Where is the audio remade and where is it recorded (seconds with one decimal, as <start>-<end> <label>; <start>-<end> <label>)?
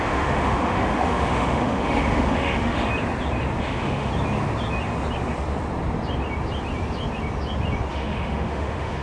0.0-2.9 remade; 2.9-3.6 recorded; 3.6-4.1 remade; 4.1-7.9 recorded; 7.9-9.0 remade